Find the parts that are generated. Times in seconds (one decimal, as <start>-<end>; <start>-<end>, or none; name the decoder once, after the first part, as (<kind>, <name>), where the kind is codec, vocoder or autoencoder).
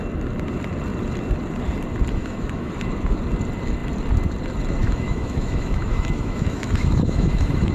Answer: 2.2-2.7 (autoencoder, DAC-VAE); 4.8-7.7